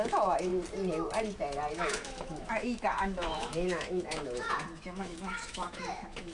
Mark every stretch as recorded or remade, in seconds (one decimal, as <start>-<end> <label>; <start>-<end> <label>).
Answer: 0.0-0.5 remade; 0.5-1.7 recorded; 1.7-6.3 remade